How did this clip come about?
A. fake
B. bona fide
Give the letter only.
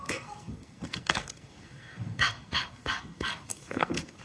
A